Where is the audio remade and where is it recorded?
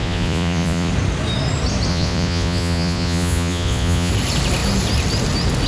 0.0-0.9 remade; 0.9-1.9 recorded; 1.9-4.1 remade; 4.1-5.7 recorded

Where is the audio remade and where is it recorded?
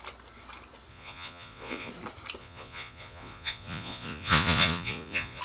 0.0-0.9 recorded; 0.9-1.9 remade; 1.9-2.4 recorded; 2.4-5.4 remade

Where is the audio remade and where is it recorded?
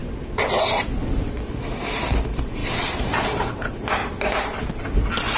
0.0-2.6 recorded; 2.6-3.5 remade; 3.5-4.0 recorded; 4.0-4.6 remade; 4.6-5.4 recorded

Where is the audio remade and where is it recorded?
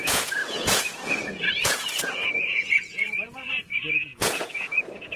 0.0-5.2 remade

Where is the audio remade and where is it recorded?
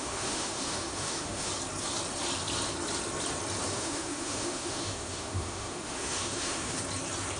0.0-1.5 remade; 1.5-3.7 recorded; 3.7-6.8 remade; 6.8-7.4 recorded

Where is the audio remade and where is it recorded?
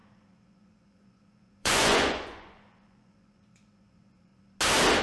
0.0-4.3 remade; 4.3-5.0 recorded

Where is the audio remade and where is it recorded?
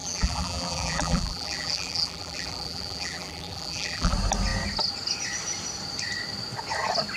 0.0-4.1 remade; 4.1-7.2 recorded